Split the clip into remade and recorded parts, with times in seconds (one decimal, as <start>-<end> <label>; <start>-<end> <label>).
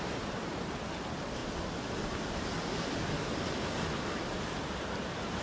0.0-5.4 recorded